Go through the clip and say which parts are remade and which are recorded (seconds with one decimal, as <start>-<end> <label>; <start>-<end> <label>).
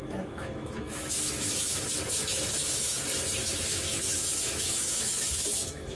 0.0-1.8 remade; 1.8-2.3 recorded; 2.3-3.0 remade; 3.0-3.4 recorded; 3.4-6.0 remade